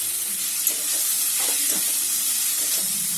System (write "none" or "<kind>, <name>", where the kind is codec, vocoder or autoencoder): none